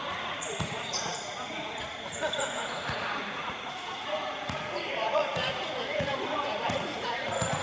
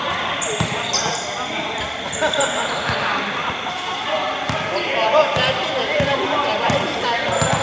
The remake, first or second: first